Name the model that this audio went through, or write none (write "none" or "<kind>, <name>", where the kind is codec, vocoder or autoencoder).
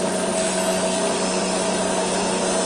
none